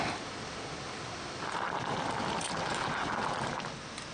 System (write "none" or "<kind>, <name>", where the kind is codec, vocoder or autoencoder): none